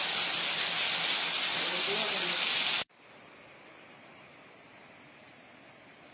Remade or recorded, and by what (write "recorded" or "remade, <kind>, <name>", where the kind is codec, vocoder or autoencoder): recorded